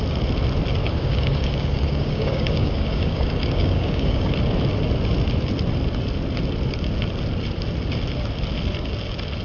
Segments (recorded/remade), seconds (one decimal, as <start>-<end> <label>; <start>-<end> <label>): 0.0-0.8 recorded; 0.8-4.3 remade; 4.3-9.4 recorded